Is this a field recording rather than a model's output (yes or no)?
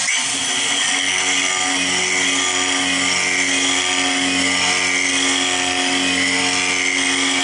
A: yes